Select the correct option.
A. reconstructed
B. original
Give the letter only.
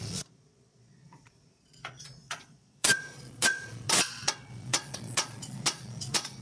A